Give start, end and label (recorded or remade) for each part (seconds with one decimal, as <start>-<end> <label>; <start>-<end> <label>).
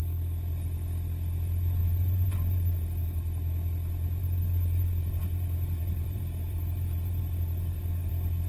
0.0-1.8 recorded; 1.8-3.0 remade; 3.0-4.2 recorded; 4.2-8.1 remade; 8.1-8.5 recorded